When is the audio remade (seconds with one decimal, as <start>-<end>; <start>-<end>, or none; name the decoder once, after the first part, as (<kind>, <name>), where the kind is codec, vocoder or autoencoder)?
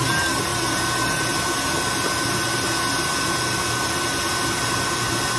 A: none